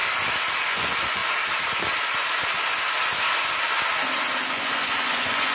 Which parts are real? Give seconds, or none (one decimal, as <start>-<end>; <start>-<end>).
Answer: 0.0-0.7; 1.2-4.5